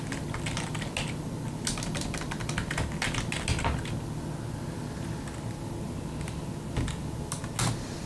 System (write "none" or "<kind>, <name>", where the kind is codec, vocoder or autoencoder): none